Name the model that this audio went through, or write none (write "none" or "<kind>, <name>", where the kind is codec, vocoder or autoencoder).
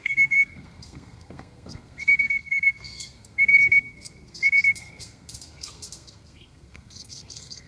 codec, SNAC